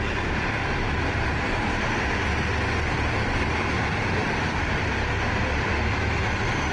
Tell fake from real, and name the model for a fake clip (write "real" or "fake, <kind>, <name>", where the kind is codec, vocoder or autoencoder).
real